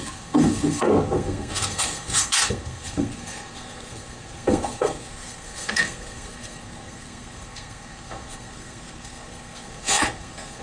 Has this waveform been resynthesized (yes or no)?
yes